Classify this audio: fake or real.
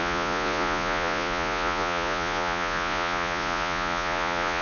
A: fake